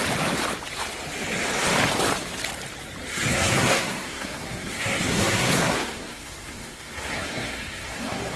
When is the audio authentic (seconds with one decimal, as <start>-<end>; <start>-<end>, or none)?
0.0-3.1